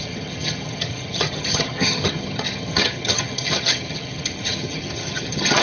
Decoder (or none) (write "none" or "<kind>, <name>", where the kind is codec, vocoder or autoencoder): vocoder, HiFi-GAN